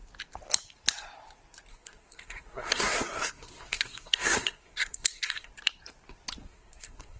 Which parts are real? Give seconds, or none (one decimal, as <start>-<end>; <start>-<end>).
0.0-1.7; 5.5-6.4